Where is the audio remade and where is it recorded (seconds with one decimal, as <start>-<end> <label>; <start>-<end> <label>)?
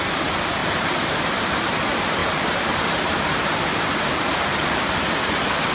0.0-0.6 recorded; 0.6-1.2 remade; 1.2-2.2 recorded; 2.2-3.8 remade; 3.8-5.7 recorded